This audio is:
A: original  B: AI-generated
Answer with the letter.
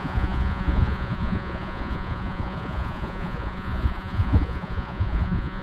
B